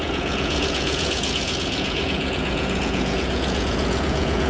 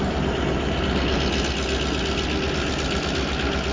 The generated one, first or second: first